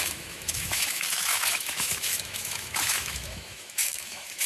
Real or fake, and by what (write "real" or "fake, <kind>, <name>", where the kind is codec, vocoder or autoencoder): fake, autoencoder, DAC-VAE